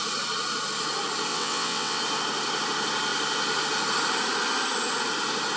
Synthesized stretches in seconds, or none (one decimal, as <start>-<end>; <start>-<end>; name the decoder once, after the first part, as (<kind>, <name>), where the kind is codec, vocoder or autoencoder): 1.3-2.0 (vocoder, WaveNeXt)